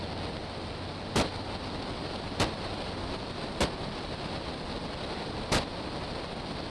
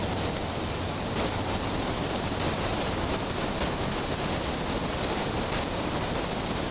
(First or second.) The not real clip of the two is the second